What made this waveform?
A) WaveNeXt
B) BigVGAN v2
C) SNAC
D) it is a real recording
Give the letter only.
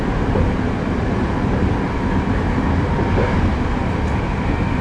D